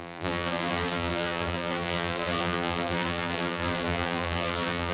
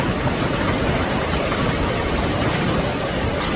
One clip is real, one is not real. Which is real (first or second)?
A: second